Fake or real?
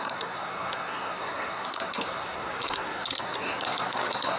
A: fake